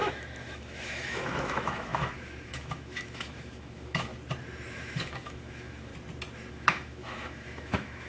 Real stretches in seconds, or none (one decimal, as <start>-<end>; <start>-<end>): 4.1-4.7; 5.9-6.5